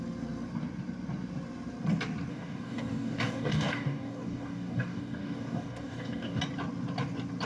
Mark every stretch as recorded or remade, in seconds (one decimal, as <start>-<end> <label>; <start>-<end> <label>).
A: 0.0-2.3 recorded; 2.3-6.4 remade; 6.4-7.5 recorded